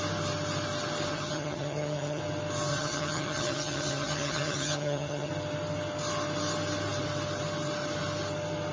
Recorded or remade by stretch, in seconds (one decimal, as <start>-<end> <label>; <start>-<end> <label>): 0.0-1.1 recorded; 1.1-2.2 remade; 2.2-2.7 recorded; 2.7-5.3 remade; 5.3-8.7 recorded